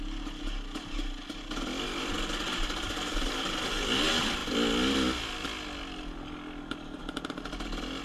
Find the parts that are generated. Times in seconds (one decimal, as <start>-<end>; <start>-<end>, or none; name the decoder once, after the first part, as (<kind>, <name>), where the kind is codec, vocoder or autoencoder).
none